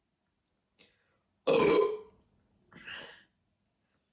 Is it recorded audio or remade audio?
recorded